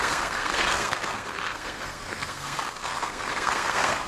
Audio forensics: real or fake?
fake